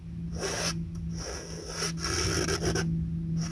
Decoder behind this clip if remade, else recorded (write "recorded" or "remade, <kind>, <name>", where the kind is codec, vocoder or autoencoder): recorded